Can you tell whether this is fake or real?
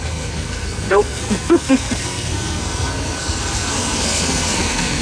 fake